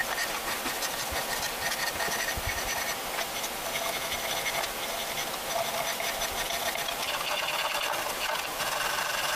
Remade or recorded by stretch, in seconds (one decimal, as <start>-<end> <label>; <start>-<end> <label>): 0.0-9.4 remade